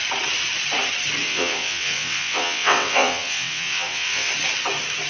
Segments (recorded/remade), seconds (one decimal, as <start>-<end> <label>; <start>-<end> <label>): 0.0-1.2 recorded; 1.2-4.3 remade; 4.3-5.1 recorded